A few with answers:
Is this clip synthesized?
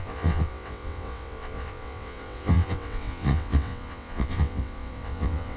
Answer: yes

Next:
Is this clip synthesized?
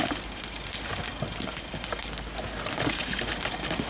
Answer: no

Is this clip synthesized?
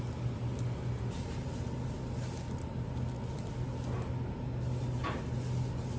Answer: no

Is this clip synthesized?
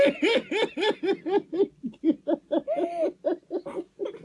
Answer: no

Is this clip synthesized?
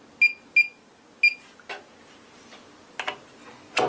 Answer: no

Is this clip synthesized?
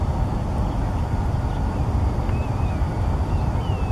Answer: no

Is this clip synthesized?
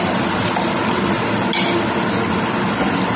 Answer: no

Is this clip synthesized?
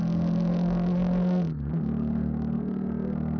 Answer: yes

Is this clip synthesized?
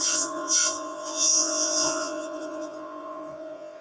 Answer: yes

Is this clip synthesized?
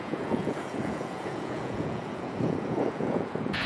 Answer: yes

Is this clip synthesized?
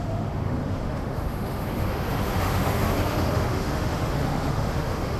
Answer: yes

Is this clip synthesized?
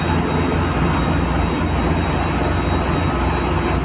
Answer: no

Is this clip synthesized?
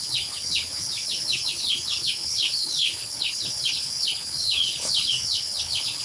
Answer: yes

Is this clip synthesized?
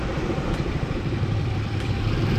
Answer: yes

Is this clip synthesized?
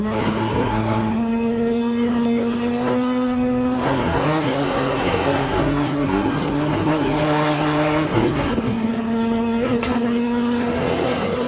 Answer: yes